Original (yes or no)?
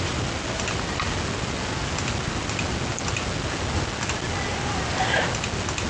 yes